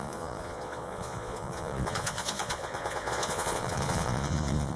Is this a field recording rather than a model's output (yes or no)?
no